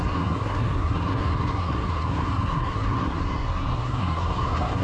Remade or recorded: remade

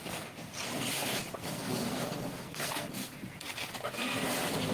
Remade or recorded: remade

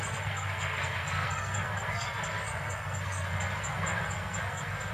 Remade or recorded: remade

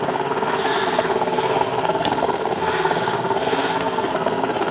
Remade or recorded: remade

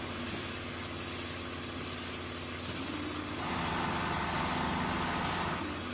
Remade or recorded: recorded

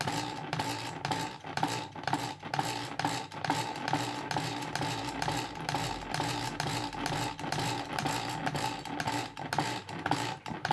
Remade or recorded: recorded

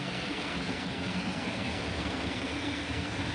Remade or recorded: remade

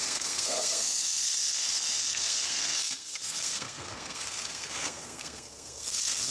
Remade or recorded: remade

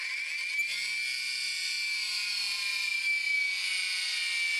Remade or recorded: recorded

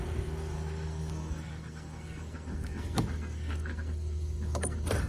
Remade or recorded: remade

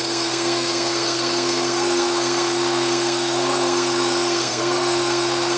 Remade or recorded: remade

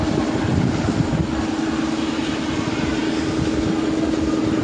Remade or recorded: recorded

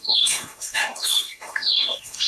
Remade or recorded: remade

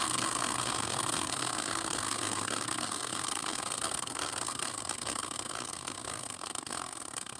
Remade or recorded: remade